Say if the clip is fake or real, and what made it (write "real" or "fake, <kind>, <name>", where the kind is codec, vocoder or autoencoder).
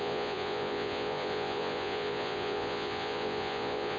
fake, vocoder, Vocos